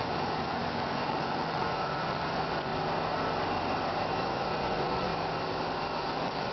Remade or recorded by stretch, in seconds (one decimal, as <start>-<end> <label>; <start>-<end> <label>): 0.0-2.7 remade; 2.7-4.2 recorded; 4.2-5.1 remade; 5.1-6.0 recorded; 6.0-6.5 remade

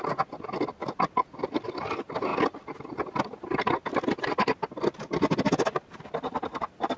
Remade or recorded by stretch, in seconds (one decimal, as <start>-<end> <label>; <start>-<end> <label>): 0.0-7.0 recorded

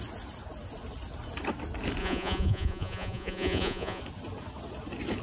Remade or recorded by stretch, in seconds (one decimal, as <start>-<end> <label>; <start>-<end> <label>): 0.0-2.0 recorded; 2.0-4.0 remade; 4.0-5.2 recorded

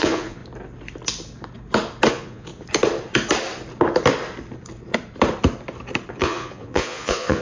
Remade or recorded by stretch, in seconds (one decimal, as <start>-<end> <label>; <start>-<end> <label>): 0.0-0.4 remade; 0.4-2.1 recorded; 2.1-2.5 remade; 2.5-6.1 recorded; 6.1-7.4 remade

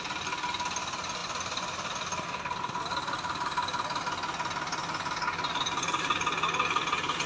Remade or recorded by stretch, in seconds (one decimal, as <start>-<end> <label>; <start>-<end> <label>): 0.0-7.3 recorded

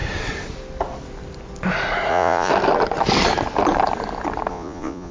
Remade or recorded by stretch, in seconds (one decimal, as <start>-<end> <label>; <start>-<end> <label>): 0.0-2.1 recorded; 2.1-2.5 remade; 2.5-4.5 recorded; 4.5-5.1 remade

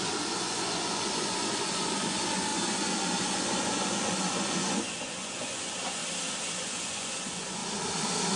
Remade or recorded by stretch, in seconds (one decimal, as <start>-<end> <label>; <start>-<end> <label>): 0.0-6.0 remade; 6.0-6.5 recorded; 6.5-7.6 remade; 7.6-8.4 recorded